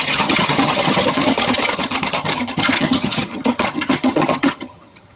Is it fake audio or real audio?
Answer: fake